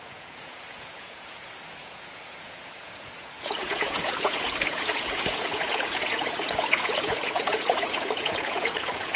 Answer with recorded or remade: remade